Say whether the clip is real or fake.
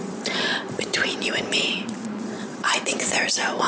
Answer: fake